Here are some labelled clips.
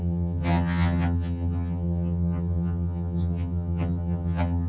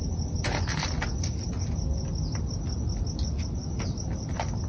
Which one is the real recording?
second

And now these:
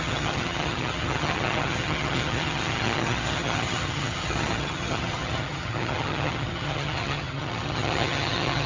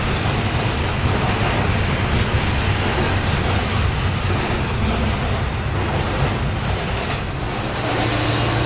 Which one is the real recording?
second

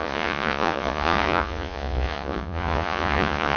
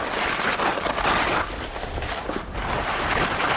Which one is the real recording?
second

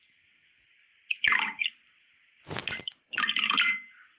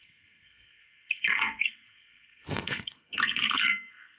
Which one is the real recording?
first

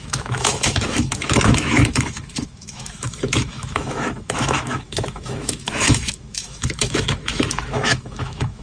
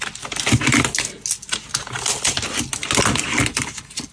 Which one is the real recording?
second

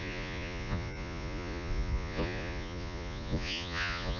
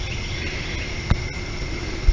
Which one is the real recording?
second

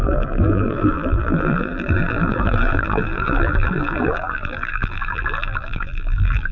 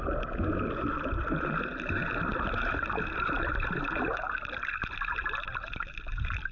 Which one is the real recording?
second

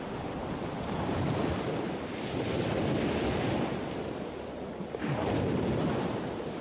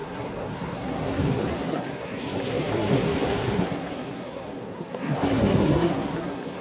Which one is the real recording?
first